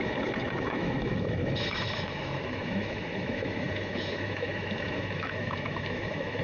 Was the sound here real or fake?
fake